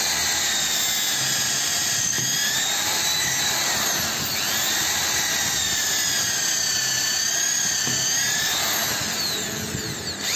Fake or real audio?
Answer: real